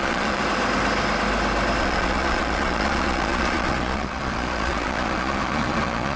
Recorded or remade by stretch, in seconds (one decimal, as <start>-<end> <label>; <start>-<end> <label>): 0.0-0.4 remade; 0.4-1.8 recorded; 1.8-6.2 remade